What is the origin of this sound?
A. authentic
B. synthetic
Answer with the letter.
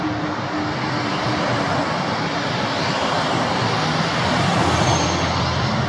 A